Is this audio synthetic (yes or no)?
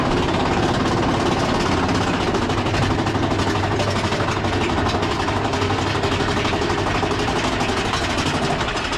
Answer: no